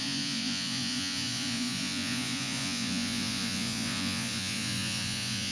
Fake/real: fake